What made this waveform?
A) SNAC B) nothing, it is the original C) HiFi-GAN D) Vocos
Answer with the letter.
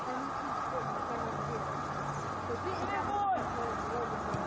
B